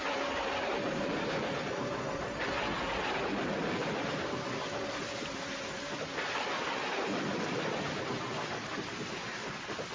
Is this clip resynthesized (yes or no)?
no